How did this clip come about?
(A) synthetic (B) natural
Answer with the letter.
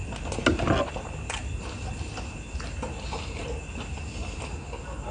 B